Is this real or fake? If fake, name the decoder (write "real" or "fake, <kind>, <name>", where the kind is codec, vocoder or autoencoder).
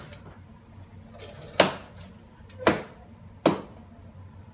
real